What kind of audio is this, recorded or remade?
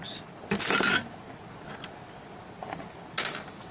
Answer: recorded